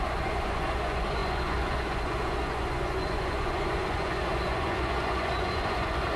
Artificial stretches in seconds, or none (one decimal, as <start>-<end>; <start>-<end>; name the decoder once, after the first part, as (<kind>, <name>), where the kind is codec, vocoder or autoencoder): 0.0-6.2 (vocoder, Vocos)